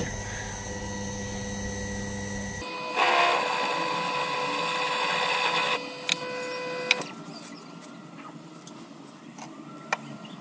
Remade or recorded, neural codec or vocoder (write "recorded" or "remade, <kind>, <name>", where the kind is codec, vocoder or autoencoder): recorded